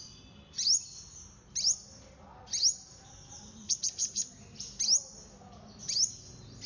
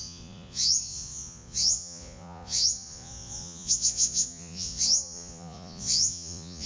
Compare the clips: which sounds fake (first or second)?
second